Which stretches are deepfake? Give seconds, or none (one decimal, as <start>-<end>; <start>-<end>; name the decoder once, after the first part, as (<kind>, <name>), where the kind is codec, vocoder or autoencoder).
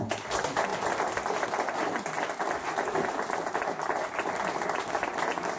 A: none